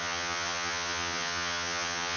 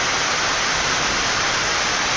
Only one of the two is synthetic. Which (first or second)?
first